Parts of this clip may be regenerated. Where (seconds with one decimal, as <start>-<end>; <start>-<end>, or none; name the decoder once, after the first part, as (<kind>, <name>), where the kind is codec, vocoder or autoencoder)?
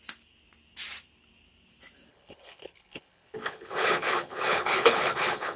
2.1-5.6 (codec, HILCodec)